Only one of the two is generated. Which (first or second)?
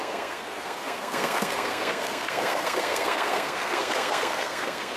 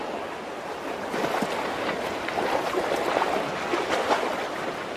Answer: first